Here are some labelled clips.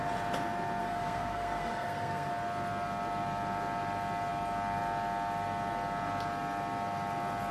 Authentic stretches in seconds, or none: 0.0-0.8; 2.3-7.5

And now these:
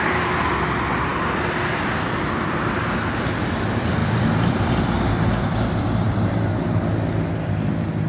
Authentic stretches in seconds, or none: 0.0-4.0; 4.7-8.1

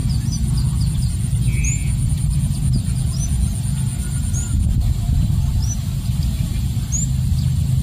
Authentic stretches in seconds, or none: 0.0-7.8

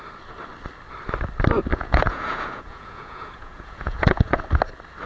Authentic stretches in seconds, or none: 0.0-1.7; 4.4-5.1